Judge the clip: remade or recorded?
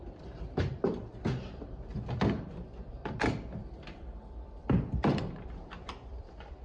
remade